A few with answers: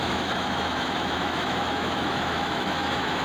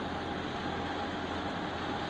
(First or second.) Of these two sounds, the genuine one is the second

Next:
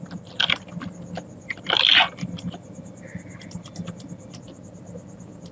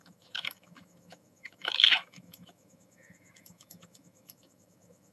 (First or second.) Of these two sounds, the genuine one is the first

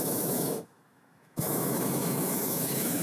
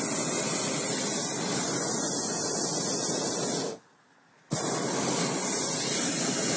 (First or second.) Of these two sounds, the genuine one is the second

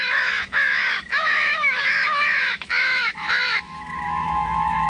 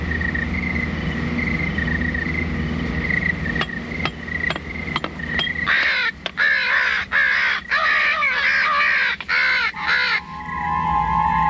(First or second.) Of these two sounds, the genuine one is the second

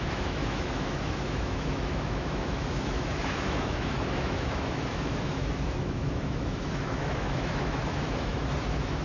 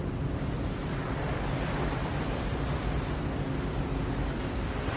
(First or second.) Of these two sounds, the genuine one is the second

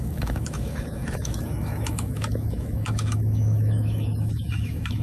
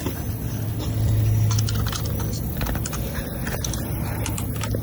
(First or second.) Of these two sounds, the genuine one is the second